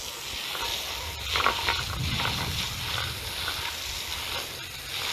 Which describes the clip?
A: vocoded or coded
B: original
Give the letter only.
B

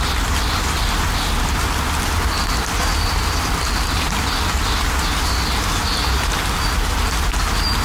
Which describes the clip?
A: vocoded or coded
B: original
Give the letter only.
B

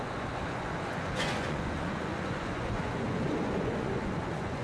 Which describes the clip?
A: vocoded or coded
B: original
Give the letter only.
A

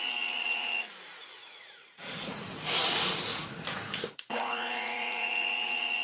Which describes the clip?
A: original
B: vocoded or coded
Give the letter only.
B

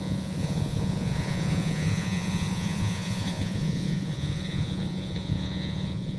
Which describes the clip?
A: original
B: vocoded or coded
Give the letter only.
B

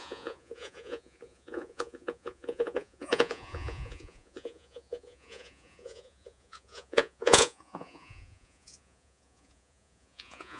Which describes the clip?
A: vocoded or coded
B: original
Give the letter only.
A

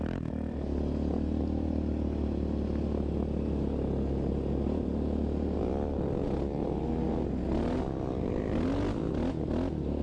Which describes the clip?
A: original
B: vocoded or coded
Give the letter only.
A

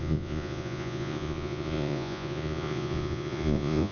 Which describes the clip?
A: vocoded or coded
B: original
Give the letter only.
A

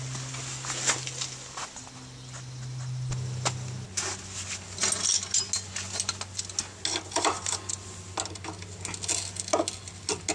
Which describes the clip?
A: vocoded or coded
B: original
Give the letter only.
B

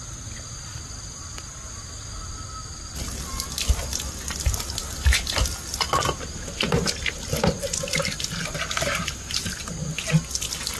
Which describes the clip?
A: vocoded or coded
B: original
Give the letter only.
B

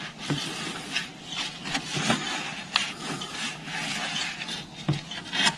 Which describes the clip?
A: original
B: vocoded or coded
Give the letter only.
A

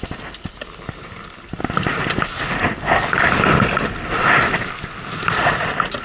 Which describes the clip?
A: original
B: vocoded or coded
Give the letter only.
A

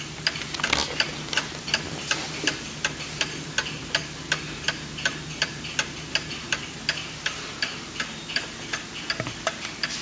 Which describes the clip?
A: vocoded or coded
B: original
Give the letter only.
B